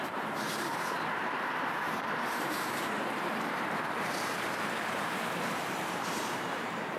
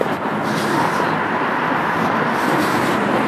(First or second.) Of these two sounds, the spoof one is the first